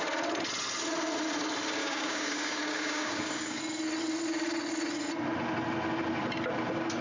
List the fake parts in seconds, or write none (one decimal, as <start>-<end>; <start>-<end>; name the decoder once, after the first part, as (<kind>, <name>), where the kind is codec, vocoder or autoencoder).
1.8-3.6 (codec, DAC)